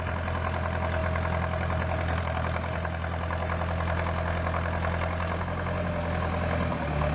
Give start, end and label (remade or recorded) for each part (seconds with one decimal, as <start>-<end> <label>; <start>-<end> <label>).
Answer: 0.0-7.1 recorded